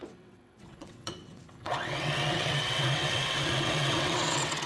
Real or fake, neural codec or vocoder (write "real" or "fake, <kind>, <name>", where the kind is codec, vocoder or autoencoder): fake, vocoder, WaveNeXt